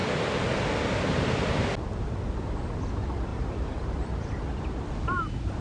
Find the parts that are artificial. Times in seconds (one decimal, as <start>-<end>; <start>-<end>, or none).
none